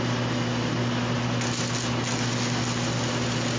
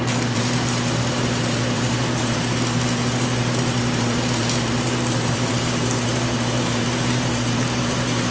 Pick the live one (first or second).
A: first